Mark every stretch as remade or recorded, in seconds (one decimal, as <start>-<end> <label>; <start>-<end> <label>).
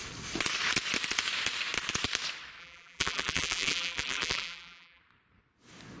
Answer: 0.0-2.6 recorded; 2.6-5.0 remade; 5.0-6.0 recorded